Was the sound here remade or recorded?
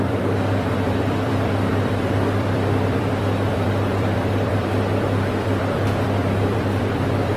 remade